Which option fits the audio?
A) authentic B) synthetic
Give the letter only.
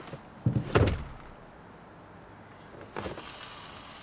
A